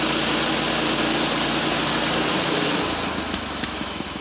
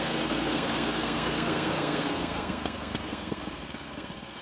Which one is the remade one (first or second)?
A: second